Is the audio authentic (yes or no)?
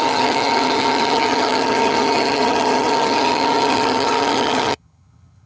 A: no